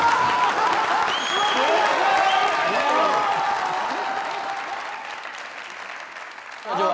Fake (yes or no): no